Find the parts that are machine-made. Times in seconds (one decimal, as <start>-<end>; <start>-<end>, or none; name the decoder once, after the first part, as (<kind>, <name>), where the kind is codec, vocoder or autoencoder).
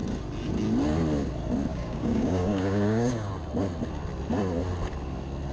1.7-3.3 (codec, DAC)